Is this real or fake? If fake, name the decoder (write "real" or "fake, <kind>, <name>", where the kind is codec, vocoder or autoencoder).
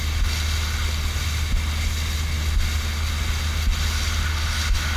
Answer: real